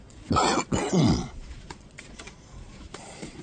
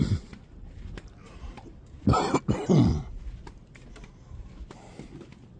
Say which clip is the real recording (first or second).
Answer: second